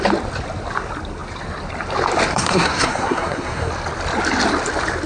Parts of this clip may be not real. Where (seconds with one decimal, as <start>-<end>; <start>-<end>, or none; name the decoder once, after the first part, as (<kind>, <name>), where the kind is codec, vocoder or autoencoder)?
2.3-3.7 (codec, SNAC)